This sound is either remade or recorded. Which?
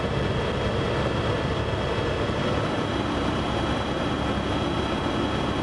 recorded